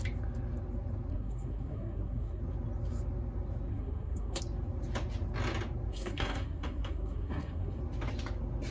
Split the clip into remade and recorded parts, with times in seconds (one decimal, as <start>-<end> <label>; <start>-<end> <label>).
0.0-1.1 recorded; 1.1-2.4 remade; 2.4-3.7 recorded; 3.7-4.4 remade; 4.4-5.9 recorded; 5.9-7.8 remade; 7.8-8.7 recorded